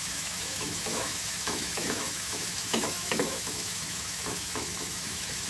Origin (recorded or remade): remade